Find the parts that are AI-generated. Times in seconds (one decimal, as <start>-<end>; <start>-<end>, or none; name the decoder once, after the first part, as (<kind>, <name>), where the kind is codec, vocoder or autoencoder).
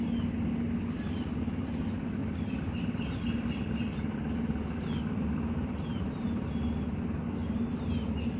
2.2-3.9 (vocoder, BigVGAN v2)